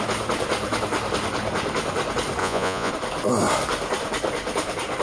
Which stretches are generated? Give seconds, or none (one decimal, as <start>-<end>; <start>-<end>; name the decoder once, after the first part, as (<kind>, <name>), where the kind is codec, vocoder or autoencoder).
2.4-2.9 (vocoder, Vocos)